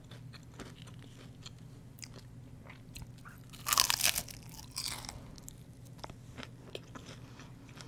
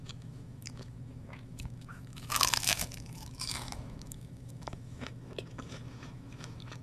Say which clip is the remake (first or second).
second